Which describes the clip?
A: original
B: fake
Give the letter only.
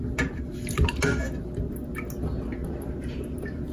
A